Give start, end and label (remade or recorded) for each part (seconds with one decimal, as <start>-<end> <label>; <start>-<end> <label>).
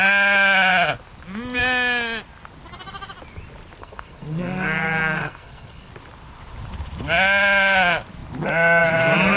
0.0-3.8 recorded; 3.8-5.9 remade; 5.9-9.4 recorded